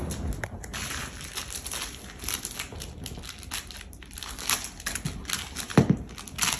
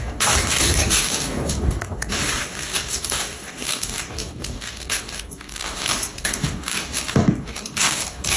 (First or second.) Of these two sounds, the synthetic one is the second